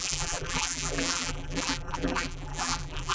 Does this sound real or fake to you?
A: fake